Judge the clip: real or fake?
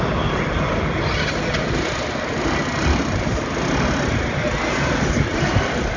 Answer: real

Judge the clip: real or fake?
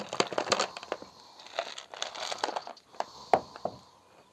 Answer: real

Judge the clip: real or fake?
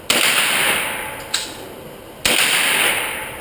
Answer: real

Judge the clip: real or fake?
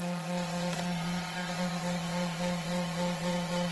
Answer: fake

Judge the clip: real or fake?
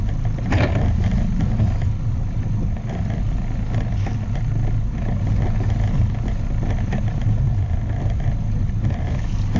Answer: real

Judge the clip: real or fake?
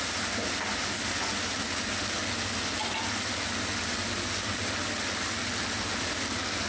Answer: real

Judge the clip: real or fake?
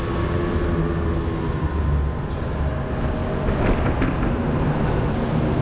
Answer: real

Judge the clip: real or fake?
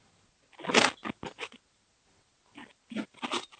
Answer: real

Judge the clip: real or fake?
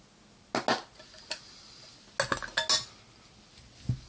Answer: real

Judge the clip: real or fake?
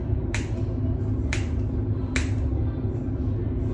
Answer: real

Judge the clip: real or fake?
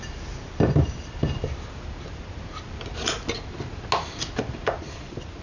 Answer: real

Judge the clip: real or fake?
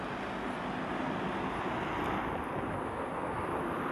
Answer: real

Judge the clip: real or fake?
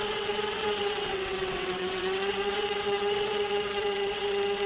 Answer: fake